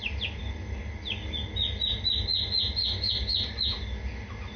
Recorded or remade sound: recorded